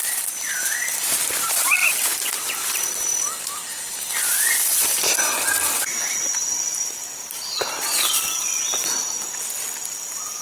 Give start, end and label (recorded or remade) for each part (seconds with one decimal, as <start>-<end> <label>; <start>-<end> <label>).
0.0-1.8 remade; 1.8-5.2 recorded; 5.2-10.4 remade